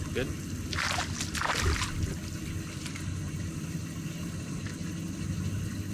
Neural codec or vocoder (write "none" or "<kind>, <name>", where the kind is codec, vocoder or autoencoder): none